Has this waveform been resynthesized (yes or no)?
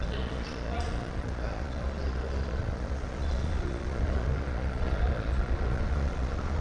yes